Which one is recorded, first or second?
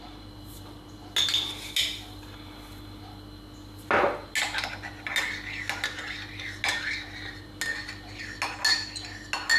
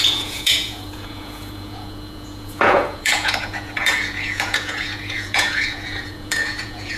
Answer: first